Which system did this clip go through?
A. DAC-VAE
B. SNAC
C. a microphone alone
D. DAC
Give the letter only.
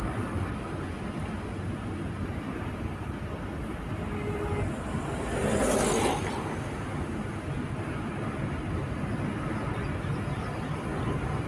C